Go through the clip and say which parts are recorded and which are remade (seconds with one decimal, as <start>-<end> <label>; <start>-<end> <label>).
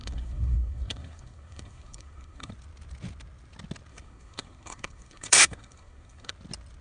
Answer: 0.0-2.5 remade; 2.5-3.9 recorded; 3.9-6.3 remade; 6.3-6.8 recorded